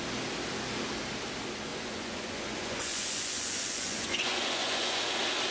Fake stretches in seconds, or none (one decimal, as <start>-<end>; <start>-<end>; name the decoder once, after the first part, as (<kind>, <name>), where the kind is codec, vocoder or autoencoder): 1.7-5.0 (vocoder, Vocos)